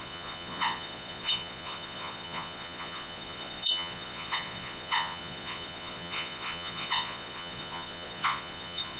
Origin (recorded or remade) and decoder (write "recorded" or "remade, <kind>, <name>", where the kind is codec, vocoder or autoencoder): remade, vocoder, Vocos